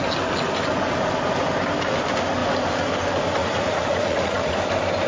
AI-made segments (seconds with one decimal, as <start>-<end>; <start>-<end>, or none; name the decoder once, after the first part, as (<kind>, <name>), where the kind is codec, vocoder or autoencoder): 3.4-4.6 (vocoder, Vocos)